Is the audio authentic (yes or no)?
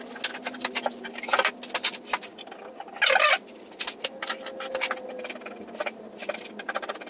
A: yes